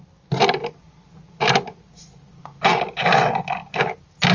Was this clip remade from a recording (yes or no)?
no